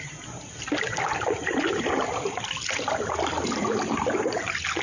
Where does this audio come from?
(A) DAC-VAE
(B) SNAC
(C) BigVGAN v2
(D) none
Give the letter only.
D